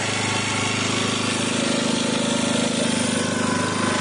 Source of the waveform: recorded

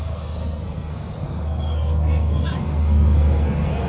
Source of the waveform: remade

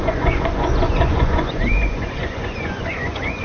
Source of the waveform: remade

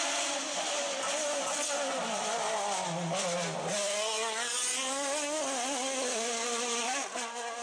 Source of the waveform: recorded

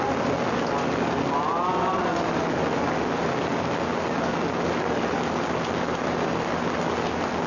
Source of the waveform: recorded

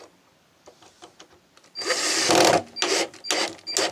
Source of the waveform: recorded